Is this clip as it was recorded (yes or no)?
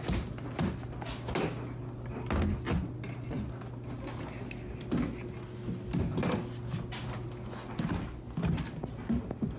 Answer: yes